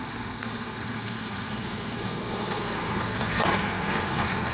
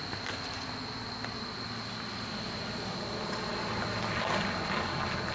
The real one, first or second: second